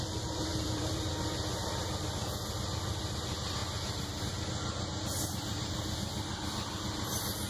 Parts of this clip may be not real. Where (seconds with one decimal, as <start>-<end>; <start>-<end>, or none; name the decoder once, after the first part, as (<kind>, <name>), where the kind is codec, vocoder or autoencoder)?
0.5-1.1 (vocoder, BigVGAN v2)